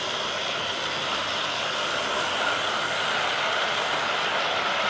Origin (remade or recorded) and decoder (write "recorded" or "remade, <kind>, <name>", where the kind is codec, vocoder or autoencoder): recorded